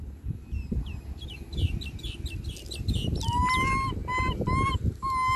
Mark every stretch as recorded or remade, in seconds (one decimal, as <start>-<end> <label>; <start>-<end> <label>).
0.0-5.4 recorded

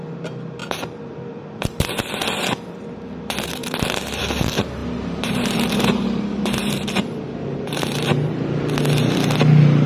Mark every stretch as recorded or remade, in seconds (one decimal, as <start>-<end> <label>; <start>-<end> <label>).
0.0-0.6 recorded; 0.6-2.1 remade; 2.1-3.6 recorded; 3.6-4.2 remade; 4.2-4.8 recorded; 4.8-8.6 remade; 8.6-9.9 recorded

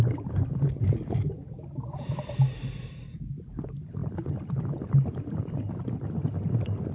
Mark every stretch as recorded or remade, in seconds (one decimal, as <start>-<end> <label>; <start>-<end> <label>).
0.0-6.9 recorded

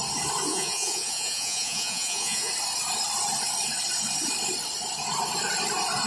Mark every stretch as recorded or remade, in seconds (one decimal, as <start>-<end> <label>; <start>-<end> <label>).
0.0-0.5 recorded; 0.5-2.5 remade; 2.5-6.1 recorded